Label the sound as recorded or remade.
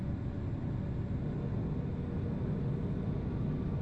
recorded